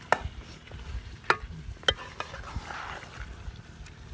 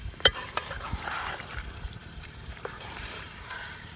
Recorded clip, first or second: first